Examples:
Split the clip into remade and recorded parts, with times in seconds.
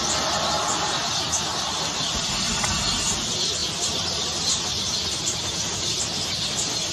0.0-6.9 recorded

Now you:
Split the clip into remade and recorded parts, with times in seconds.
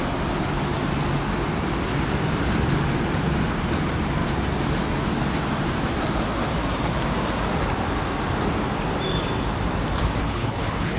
0.0-10.2 recorded; 10.2-11.0 remade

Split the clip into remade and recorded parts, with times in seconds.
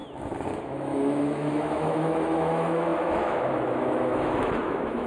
0.0-0.6 recorded; 0.6-5.1 remade